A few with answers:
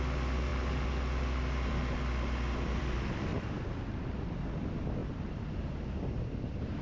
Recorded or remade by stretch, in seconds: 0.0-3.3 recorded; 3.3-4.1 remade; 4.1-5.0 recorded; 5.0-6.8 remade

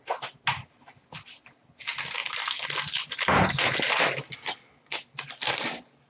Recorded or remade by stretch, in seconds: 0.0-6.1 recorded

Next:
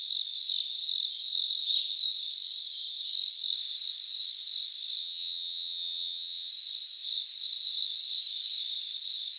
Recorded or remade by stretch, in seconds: 0.0-5.0 recorded; 5.0-6.5 remade; 6.5-9.4 recorded

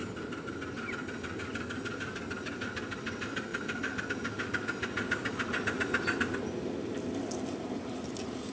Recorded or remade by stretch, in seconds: 0.0-8.5 recorded

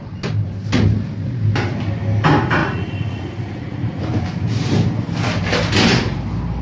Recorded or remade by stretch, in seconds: 0.0-2.6 recorded; 2.6-4.0 remade; 4.0-6.6 recorded

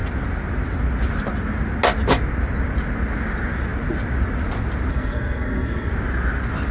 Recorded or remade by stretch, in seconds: 0.0-4.9 recorded; 4.9-5.9 remade; 5.9-6.7 recorded

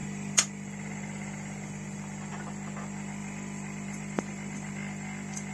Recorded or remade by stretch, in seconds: 0.0-2.3 remade; 2.3-3.2 recorded; 3.2-4.7 remade; 4.7-5.5 recorded

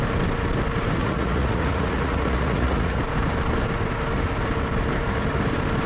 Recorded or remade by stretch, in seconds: 0.0-1.0 recorded; 1.0-3.0 remade; 3.0-5.9 recorded